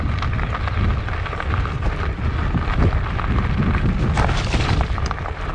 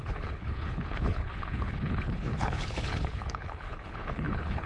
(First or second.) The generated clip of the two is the second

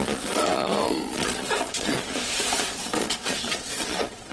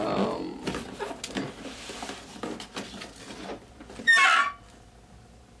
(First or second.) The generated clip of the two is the first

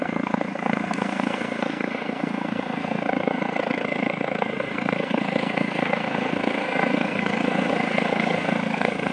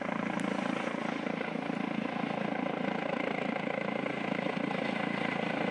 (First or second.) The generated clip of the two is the first